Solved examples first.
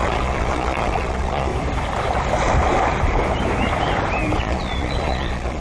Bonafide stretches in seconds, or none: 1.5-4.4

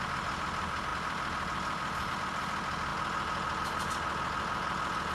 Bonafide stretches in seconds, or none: 0.0-5.1